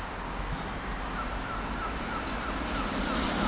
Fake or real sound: real